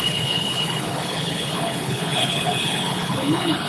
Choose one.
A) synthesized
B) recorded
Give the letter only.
A